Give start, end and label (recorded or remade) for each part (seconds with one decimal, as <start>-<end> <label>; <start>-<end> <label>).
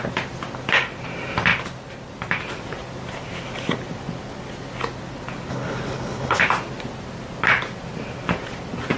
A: 0.0-5.5 recorded; 5.5-6.4 remade; 6.4-9.0 recorded